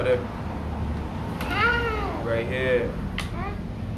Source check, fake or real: real